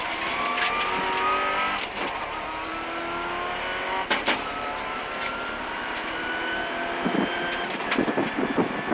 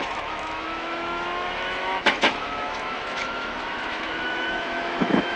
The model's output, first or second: second